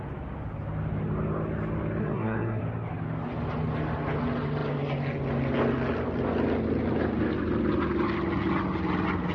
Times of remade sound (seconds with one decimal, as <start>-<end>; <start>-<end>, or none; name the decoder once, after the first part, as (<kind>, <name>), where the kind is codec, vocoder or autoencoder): 2.0-2.6 (codec, SNAC)